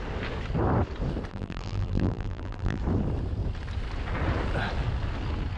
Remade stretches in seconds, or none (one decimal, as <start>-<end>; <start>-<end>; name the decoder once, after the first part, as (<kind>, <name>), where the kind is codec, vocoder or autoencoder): 1.3-2.8 (vocoder, BigVGAN v2)